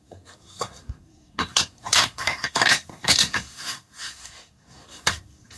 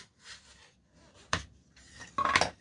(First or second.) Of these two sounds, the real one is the second